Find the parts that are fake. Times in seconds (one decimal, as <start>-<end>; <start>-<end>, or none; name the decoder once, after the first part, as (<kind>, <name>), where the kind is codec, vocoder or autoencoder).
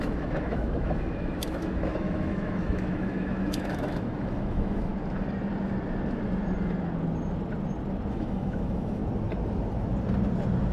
0.0-4.9 (autoencoder, DAC-VAE); 8.1-9.0